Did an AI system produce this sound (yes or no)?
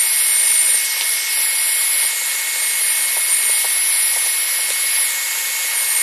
no